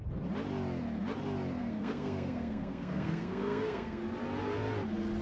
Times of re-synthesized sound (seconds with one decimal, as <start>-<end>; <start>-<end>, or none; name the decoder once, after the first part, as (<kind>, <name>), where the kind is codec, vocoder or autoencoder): 1.6-4.0 (codec, SNAC)